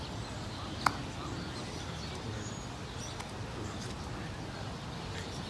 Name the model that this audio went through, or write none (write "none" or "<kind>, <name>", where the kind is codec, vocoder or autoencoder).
none